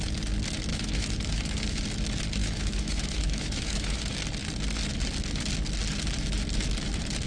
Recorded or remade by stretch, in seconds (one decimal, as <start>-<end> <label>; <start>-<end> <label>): 0.0-0.7 recorded; 0.7-1.8 remade; 1.8-2.4 recorded; 2.4-4.0 remade; 4.0-7.3 recorded